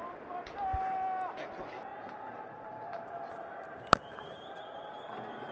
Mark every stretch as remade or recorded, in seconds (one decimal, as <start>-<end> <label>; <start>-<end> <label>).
0.0-1.9 recorded; 1.9-5.1 remade; 5.1-5.5 recorded